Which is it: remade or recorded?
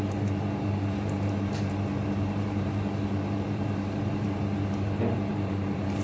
remade